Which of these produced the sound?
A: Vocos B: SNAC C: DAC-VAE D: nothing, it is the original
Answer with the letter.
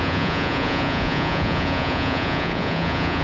A